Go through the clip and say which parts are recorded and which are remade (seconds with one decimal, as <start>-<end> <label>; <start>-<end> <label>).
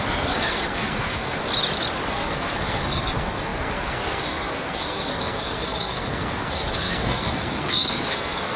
0.0-1.4 remade; 1.4-2.1 recorded; 2.1-8.6 remade